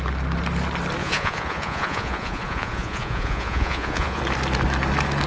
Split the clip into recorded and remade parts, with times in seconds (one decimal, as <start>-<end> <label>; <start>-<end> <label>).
0.0-1.0 recorded; 1.0-4.2 remade; 4.2-5.3 recorded

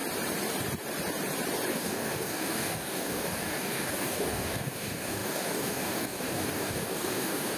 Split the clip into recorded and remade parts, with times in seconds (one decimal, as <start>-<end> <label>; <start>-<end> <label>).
0.0-1.7 recorded; 1.7-7.6 remade